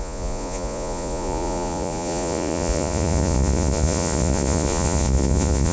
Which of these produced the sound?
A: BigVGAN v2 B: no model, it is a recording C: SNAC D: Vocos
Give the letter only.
D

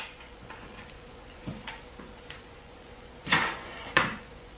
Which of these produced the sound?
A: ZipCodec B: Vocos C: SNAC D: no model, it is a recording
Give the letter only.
B